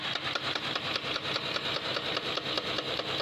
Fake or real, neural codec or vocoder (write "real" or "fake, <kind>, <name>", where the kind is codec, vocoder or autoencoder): real